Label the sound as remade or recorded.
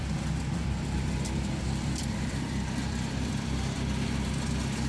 remade